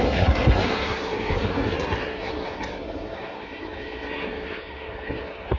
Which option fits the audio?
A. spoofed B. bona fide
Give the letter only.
A